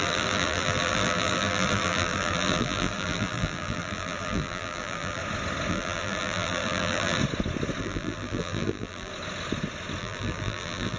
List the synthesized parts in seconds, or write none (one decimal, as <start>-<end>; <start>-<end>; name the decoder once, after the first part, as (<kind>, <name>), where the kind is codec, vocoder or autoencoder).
0.0-5.2 (vocoder, BigVGAN v2); 5.7-7.2; 7.8-9.1; 10.0-11.0